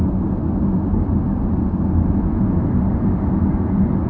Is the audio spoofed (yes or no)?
no